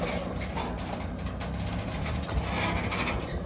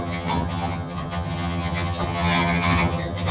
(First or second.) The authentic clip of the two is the first